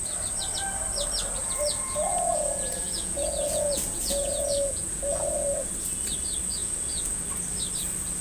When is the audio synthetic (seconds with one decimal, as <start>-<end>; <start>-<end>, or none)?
1.4-5.7; 6.6-7.2